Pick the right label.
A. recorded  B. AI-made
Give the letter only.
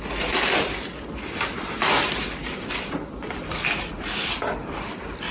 B